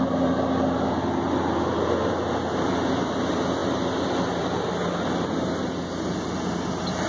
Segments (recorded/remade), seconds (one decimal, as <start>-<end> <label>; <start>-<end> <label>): 0.0-7.1 recorded